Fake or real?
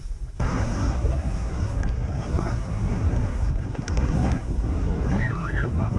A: fake